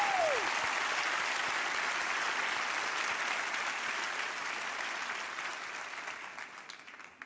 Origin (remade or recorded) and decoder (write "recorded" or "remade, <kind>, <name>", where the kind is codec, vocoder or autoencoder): recorded